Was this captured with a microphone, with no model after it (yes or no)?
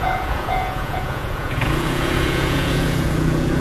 no